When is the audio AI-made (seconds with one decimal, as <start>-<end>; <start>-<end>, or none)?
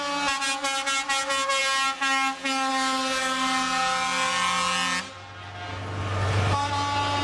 none